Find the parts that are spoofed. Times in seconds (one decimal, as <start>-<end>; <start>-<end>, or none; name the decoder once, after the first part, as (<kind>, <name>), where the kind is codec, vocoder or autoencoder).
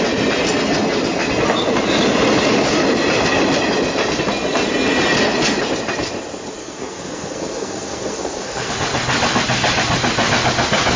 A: 6.6-8.7 (codec, SNAC)